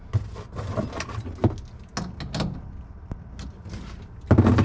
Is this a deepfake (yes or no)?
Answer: no